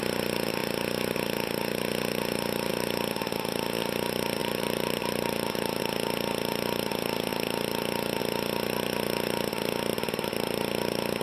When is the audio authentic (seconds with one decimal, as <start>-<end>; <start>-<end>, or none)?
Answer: 0.0-4.4; 5.8-9.9; 10.6-11.2

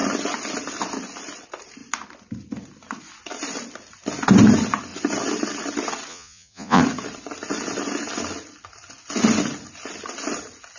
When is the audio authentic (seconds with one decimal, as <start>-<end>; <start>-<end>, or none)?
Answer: 0.0-6.1; 6.8-10.8

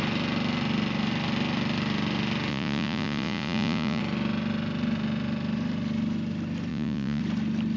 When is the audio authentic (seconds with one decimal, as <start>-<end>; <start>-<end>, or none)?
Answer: 0.0-2.5; 4.0-6.7; 7.2-7.8

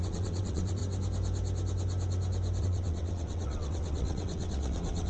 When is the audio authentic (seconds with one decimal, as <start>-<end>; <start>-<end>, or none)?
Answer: 0.8-2.6

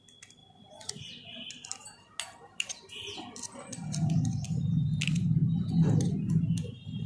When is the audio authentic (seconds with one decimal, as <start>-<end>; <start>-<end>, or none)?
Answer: 0.0-7.1

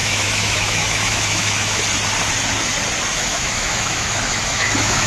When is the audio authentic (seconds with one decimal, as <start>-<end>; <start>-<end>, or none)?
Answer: 1.8-3.1

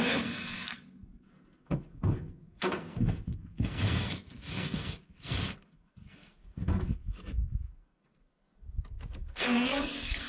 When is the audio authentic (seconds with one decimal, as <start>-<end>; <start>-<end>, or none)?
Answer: none